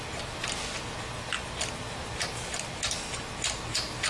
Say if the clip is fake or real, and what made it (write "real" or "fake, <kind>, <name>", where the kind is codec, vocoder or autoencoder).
real